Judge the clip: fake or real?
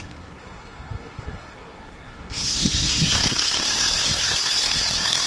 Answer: fake